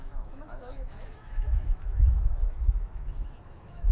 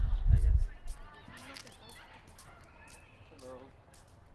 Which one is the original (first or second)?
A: second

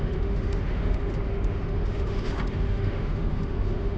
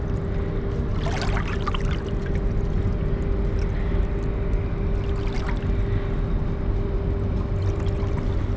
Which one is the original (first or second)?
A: second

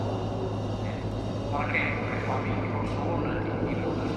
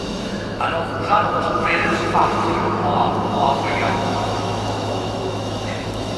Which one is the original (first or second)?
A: first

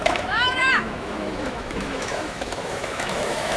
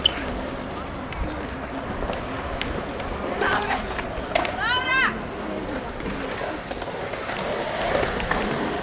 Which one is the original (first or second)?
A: second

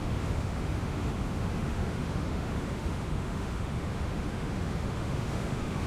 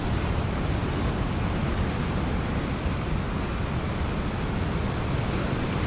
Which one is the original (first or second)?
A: second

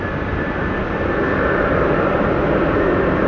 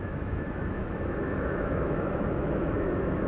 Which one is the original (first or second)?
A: first